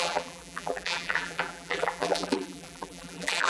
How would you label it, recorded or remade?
remade